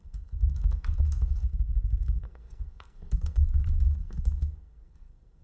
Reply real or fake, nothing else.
fake